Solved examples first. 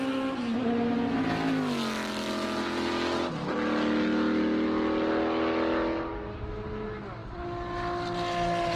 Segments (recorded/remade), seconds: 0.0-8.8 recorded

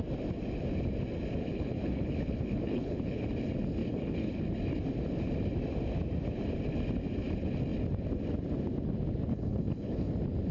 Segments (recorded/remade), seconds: 0.0-1.4 recorded; 1.4-3.3 remade; 3.3-3.8 recorded; 3.8-4.4 remade; 4.4-9.3 recorded; 9.3-10.1 remade; 10.1-10.5 recorded

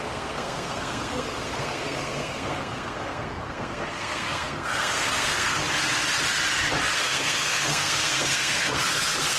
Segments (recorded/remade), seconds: 0.0-5.6 remade; 5.6-6.9 recorded; 6.9-9.4 remade